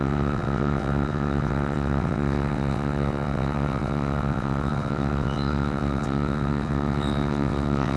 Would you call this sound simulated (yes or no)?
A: yes